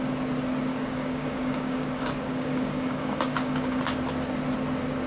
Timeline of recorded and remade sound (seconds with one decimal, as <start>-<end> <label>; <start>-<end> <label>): 0.0-0.7 recorded; 0.7-3.8 remade; 3.8-5.1 recorded